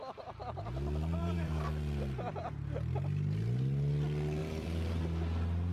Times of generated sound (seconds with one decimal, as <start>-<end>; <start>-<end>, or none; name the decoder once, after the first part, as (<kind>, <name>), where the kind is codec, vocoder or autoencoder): 1.2-1.7 (vocoder, BigVGAN v2); 4.4-5.0

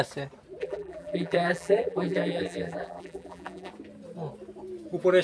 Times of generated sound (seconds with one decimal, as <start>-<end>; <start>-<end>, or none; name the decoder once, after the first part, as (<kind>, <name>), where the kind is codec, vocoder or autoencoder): 0.6-3.7 (vocoder, BigVGAN v2)

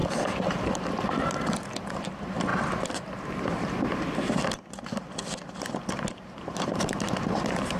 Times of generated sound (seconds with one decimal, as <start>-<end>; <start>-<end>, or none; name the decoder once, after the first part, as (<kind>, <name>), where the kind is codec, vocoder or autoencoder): 1.9-2.5 (vocoder, BigVGAN v2); 6.4-7.8

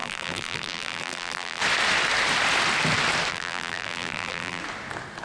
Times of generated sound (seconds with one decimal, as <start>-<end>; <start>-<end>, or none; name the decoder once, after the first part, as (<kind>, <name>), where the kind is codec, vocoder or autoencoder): 0.0-1.6 (vocoder, BigVGAN v2); 3.3-4.6

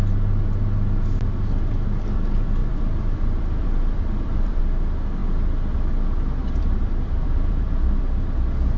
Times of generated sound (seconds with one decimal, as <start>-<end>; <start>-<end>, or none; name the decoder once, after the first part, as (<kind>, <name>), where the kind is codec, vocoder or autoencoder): 2.6-4.6 (vocoder, BigVGAN v2); 6.4-8.0

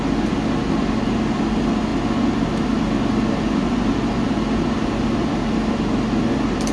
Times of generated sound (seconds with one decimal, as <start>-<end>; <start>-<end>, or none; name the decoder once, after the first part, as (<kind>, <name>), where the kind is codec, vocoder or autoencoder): none

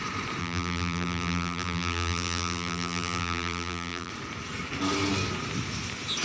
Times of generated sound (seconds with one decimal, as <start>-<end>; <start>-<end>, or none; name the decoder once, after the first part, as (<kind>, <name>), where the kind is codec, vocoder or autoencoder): 0.4-4.1 (vocoder, BigVGAN v2)